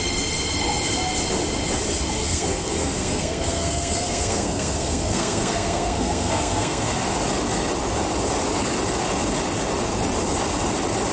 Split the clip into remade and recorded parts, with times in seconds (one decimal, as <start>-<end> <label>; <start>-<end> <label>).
0.0-2.2 recorded; 2.2-6.9 remade; 6.9-11.1 recorded